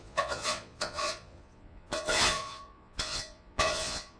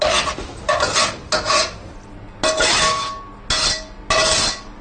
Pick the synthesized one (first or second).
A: first